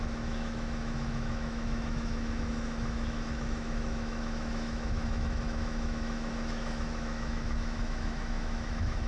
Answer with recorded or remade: remade